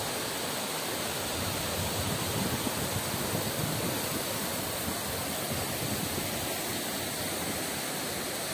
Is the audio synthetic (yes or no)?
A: no